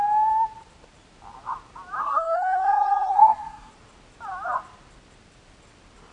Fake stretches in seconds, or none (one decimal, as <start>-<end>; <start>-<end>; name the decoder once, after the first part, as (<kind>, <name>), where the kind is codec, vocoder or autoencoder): 2.0-3.7 (codec, SNAC)